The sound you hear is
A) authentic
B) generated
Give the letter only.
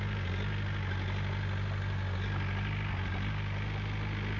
A